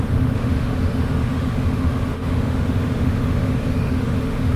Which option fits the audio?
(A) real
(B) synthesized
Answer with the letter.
B